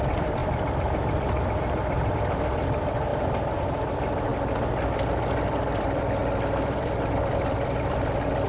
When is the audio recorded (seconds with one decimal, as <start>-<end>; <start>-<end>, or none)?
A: 0.4-2.1; 3.1-3.6; 4.3-5.8